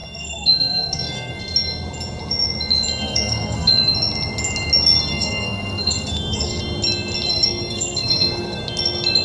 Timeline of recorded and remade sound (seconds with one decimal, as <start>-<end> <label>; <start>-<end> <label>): 0.0-1.4 remade; 1.4-3.0 recorded; 3.0-3.7 remade; 3.7-5.1 recorded; 5.1-6.6 remade; 6.6-7.3 recorded; 7.3-8.6 remade; 8.6-9.2 recorded